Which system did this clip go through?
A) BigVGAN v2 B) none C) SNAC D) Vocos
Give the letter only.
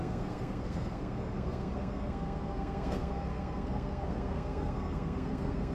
C